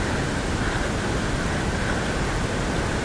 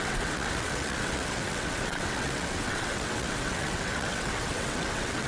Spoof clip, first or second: second